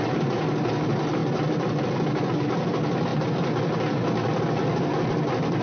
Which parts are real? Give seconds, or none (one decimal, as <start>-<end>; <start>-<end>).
0.0-5.6